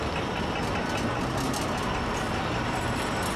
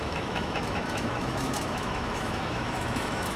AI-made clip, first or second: second